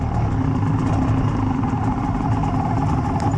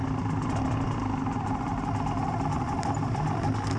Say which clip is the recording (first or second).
second